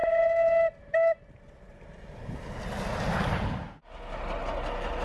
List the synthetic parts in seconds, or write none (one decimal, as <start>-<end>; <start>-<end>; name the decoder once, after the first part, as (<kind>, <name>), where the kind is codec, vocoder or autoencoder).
none